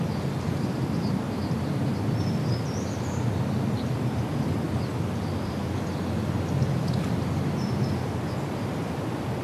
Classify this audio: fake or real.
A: real